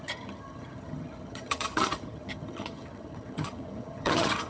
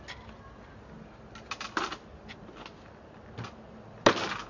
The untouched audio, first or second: second